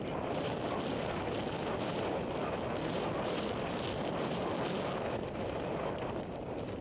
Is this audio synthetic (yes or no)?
no